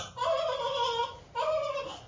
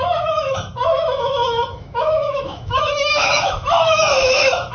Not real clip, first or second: second